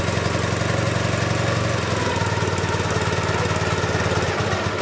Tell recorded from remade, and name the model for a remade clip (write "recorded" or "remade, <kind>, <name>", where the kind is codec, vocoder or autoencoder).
recorded